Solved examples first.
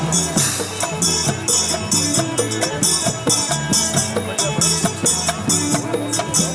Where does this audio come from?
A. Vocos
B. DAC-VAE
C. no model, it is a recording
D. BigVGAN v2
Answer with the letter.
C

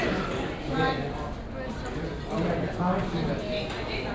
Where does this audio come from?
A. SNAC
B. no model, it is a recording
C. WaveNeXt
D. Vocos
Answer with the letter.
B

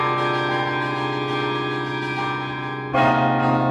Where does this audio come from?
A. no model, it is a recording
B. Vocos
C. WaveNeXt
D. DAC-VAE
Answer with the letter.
A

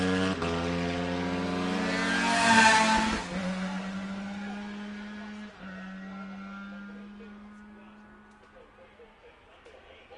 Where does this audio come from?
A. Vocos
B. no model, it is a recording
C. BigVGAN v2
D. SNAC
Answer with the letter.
B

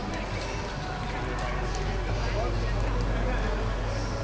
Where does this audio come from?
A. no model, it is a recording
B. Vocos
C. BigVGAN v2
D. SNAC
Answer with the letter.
A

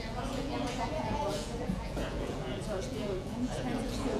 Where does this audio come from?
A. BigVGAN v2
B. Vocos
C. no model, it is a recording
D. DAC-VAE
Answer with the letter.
B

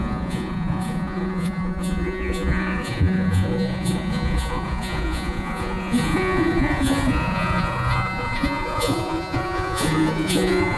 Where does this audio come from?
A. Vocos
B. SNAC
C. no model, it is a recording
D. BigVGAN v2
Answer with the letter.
A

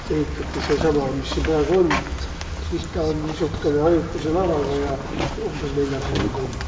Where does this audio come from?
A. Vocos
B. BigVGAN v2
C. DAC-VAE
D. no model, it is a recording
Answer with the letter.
D